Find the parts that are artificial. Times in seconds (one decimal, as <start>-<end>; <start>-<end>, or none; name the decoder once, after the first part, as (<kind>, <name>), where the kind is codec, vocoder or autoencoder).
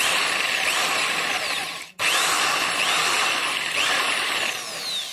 none